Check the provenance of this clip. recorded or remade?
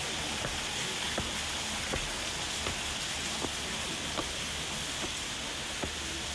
recorded